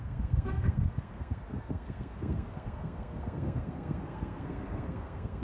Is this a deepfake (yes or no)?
yes